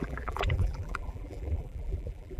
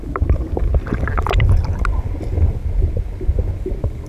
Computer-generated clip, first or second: first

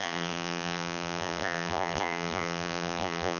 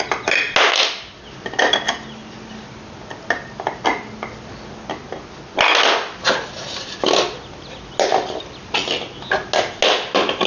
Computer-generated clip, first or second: first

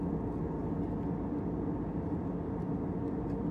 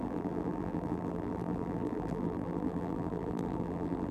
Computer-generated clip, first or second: second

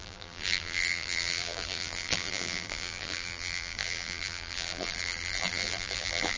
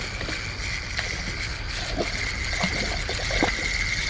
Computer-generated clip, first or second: first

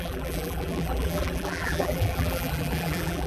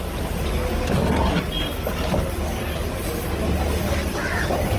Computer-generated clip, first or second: first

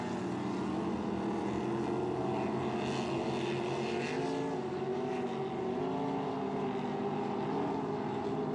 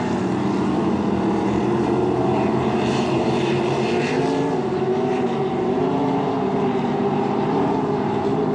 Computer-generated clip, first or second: second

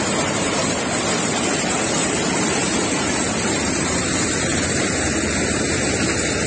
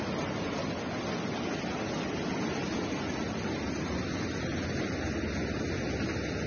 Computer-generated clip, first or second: first